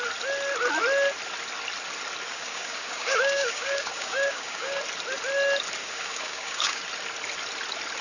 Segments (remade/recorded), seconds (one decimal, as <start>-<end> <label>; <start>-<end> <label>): 0.0-2.3 recorded; 2.3-4.8 remade; 4.8-5.8 recorded; 5.8-6.8 remade; 6.8-8.0 recorded